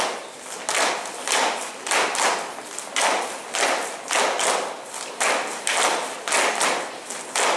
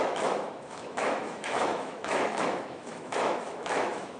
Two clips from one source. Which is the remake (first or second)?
second